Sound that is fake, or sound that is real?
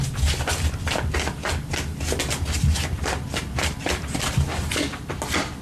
real